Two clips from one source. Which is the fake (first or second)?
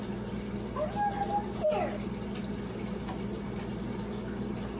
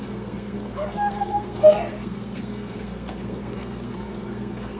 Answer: second